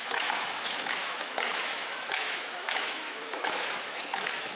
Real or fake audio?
fake